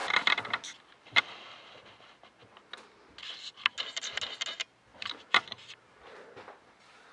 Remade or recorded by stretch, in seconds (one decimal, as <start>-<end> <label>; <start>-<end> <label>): 0.0-1.2 remade; 1.2-4.9 recorded; 4.9-5.4 remade; 5.4-7.1 recorded

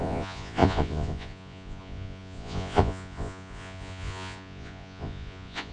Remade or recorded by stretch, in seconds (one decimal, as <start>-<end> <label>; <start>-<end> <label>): 0.0-5.7 remade